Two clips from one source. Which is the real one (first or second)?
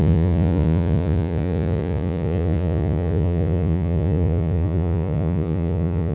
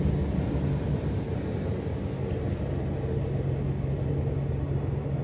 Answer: second